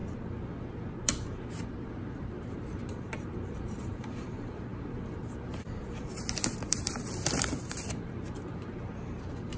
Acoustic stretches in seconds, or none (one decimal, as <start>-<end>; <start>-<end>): 0.0-1.5